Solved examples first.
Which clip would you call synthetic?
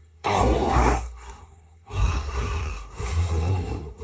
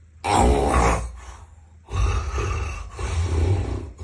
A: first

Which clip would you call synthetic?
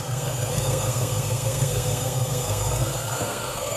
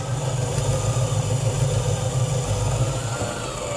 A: first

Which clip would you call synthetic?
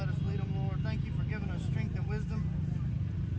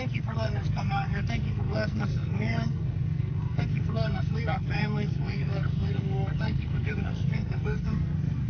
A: second